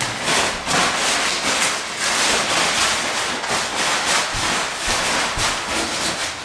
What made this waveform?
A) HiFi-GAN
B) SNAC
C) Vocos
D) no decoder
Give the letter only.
D